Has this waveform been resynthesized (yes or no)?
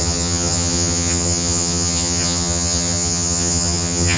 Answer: yes